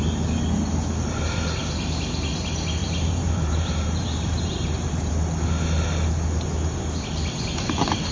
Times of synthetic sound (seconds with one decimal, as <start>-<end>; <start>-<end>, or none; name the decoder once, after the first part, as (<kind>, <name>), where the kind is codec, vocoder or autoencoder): 2.8-5.1 (vocoder, BigVGAN v2)